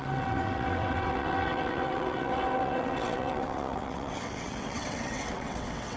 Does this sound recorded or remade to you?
remade